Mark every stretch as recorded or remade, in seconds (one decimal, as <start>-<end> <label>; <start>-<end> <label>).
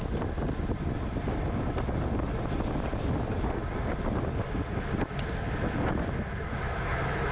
0.0-6.5 recorded; 6.5-7.3 remade